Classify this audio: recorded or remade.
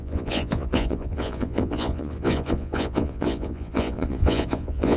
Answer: remade